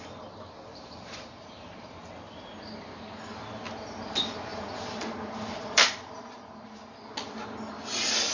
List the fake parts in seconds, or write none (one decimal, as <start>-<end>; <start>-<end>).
0.7-2.0; 4.5-7.1